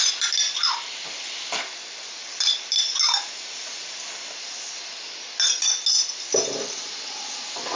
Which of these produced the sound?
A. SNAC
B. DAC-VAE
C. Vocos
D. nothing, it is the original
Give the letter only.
D